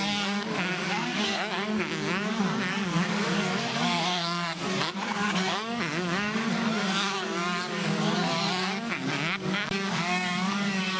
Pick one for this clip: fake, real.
fake